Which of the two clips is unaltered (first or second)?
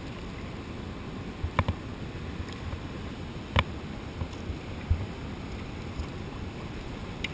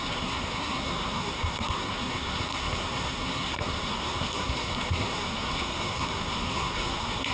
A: first